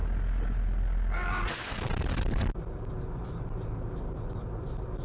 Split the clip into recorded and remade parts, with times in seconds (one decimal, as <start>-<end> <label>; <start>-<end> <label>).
0.0-5.0 recorded

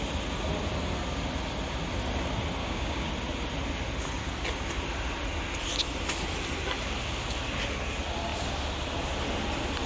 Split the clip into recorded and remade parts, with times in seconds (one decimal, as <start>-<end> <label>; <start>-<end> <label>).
0.0-2.6 recorded; 2.6-3.1 remade; 3.1-9.9 recorded

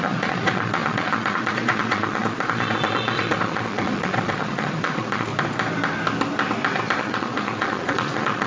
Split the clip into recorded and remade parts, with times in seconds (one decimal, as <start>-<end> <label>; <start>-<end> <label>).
0.0-5.3 remade; 5.3-7.0 recorded; 7.0-8.5 remade

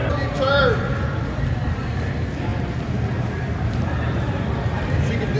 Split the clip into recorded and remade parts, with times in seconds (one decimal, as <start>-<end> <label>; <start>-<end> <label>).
0.0-5.4 recorded